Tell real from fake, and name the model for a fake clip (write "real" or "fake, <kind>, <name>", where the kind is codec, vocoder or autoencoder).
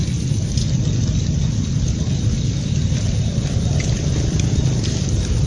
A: real